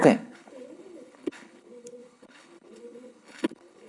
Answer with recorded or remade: remade